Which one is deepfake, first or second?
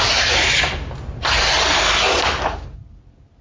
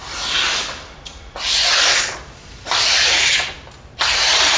second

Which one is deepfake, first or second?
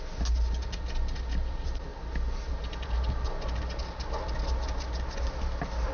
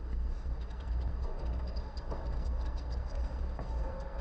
second